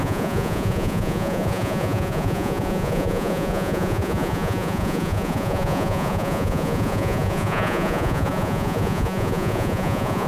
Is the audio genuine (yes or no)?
no